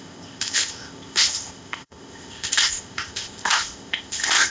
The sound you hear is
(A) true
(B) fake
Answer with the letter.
B